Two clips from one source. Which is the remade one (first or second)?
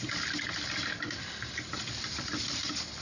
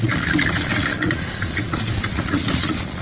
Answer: second